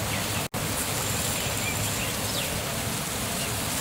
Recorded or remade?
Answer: recorded